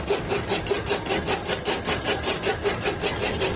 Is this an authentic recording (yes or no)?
yes